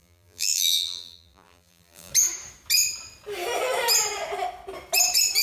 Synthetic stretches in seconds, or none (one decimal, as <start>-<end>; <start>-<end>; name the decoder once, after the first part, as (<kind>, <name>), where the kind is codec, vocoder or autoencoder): 0.0-2.1 (vocoder, BigVGAN v2)